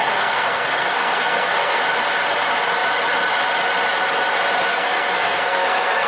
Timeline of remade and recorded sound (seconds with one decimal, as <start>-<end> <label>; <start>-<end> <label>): 0.0-1.8 remade; 1.8-4.7 recorded; 4.7-6.1 remade